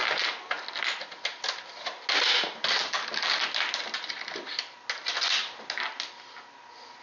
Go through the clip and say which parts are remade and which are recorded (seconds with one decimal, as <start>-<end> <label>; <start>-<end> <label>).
0.0-7.0 recorded